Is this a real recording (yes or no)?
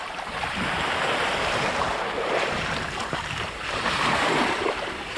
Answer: no